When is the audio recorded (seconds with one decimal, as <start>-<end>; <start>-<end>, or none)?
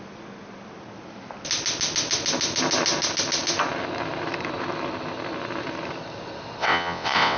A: 0.0-6.6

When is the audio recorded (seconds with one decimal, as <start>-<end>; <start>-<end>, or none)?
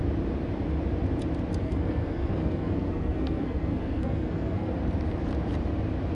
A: 0.0-1.6; 4.7-6.1